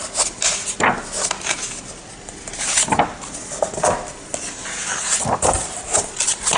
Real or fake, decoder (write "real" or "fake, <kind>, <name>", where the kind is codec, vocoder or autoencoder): real